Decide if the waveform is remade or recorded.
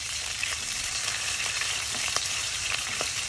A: remade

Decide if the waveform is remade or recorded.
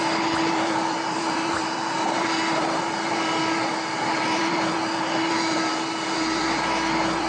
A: remade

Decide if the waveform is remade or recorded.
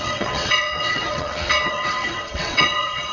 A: remade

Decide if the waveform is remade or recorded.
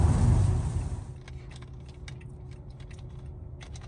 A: recorded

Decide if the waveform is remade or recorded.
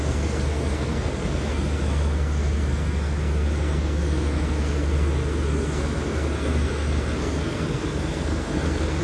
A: remade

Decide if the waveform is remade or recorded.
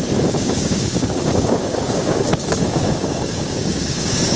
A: remade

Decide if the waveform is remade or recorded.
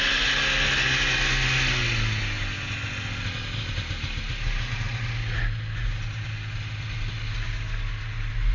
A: recorded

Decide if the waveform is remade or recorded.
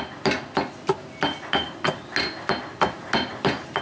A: recorded